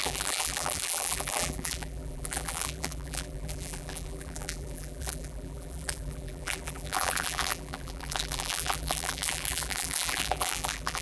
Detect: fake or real fake